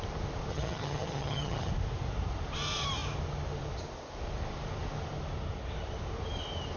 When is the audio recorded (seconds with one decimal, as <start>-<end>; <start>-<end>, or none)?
0.0-0.5; 1.7-6.8